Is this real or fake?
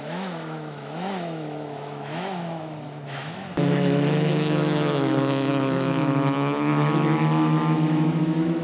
fake